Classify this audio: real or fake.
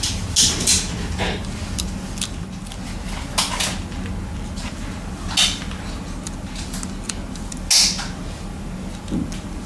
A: real